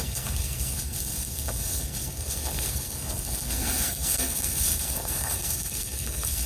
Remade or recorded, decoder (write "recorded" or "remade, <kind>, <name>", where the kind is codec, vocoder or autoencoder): remade, codec, SNAC